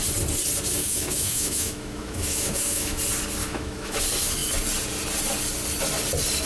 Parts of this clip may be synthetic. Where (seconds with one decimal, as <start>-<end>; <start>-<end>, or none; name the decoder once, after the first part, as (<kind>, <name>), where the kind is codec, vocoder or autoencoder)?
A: 0.8-3.0 (autoencoder, DAC-VAE); 3.4-4.0